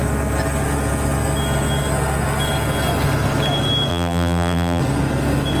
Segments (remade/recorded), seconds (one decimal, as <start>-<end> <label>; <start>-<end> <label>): 0.0-3.9 recorded; 3.9-4.8 remade; 4.8-5.6 recorded